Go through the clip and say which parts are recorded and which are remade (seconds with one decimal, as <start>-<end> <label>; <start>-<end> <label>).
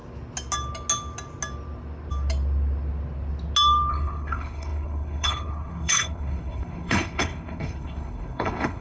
0.0-3.9 recorded; 3.9-8.8 remade